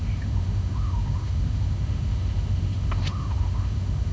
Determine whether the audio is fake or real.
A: fake